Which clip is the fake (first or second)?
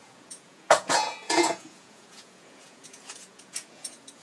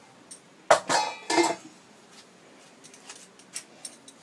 first